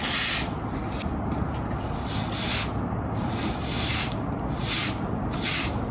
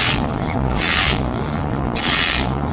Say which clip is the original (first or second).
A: first